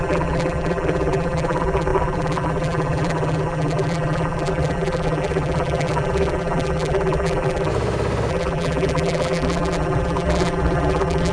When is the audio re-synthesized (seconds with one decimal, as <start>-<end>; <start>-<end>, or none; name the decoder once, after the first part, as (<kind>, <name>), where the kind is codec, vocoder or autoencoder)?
0.0-7.7 (vocoder, BigVGAN v2); 8.3-11.3